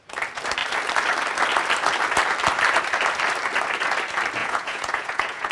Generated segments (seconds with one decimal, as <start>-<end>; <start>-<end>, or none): 4.4-5.5